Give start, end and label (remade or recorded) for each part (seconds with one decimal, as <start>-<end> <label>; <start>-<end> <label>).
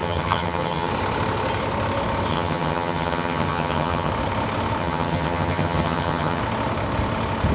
0.0-0.9 remade; 0.9-2.3 recorded; 2.3-4.1 remade; 4.1-4.8 recorded; 4.8-6.4 remade; 6.4-7.5 recorded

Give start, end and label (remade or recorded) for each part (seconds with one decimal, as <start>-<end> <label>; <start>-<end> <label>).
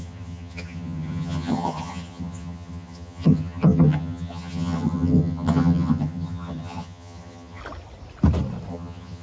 0.0-7.6 remade; 7.6-8.7 recorded; 8.7-9.2 remade